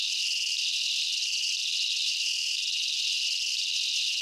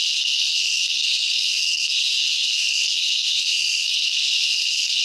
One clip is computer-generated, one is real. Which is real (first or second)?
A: first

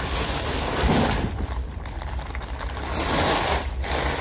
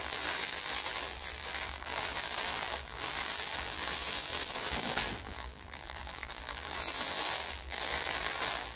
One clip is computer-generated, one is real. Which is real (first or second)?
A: first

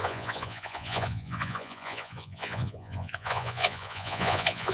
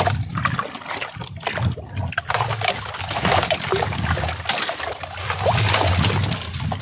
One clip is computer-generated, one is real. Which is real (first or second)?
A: second